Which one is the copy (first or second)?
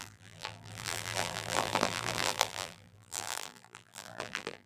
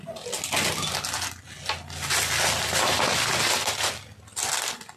first